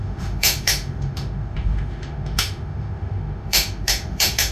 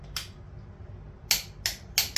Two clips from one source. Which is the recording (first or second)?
second